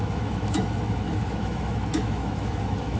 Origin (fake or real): fake